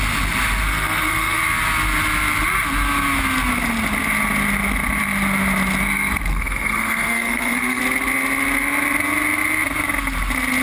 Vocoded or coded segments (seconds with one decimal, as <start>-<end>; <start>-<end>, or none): 0.7-1.4; 6.3-7.8